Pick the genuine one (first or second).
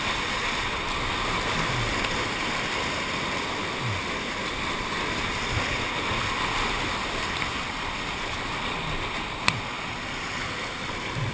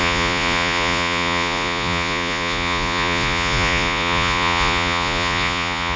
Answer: first